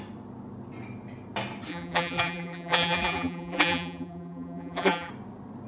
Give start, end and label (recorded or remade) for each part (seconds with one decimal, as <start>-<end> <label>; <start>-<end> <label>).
0.0-1.7 recorded; 1.7-5.1 remade; 5.1-5.7 recorded